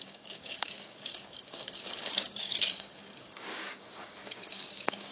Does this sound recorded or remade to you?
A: remade